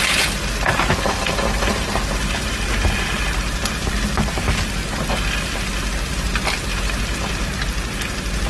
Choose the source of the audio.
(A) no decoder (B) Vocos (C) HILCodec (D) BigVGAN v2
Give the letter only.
A